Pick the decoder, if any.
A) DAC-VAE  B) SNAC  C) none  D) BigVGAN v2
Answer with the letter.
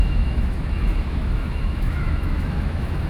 A